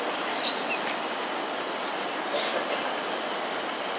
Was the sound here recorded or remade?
recorded